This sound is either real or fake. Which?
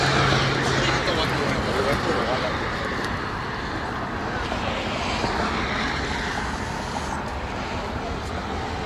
real